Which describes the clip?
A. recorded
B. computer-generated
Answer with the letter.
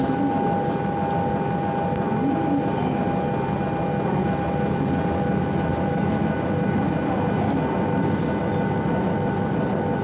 A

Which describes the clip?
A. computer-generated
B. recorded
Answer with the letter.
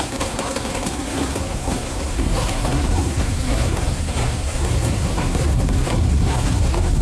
A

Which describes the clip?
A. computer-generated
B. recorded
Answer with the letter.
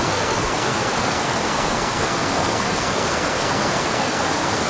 A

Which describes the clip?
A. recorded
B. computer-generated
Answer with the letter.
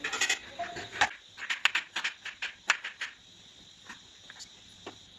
A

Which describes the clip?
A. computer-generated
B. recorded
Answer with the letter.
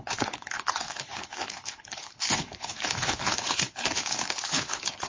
A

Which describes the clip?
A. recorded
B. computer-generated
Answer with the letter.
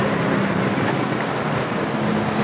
A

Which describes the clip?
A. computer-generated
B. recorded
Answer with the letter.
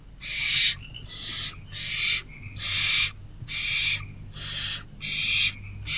B